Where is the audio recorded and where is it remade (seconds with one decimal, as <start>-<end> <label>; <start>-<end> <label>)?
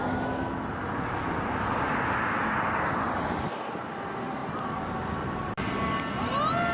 0.0-6.7 recorded